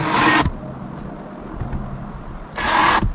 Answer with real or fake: real